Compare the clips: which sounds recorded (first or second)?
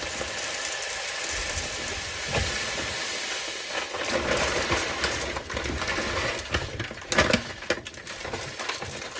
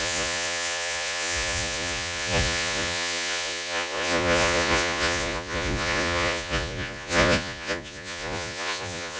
first